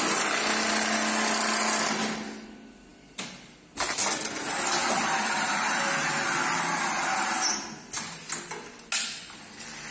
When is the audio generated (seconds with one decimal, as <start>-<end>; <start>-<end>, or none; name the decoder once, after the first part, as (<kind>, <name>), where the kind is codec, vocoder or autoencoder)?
none